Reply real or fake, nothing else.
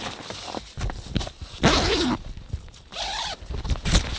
real